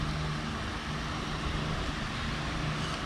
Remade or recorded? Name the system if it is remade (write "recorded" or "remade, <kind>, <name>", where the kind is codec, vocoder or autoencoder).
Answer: recorded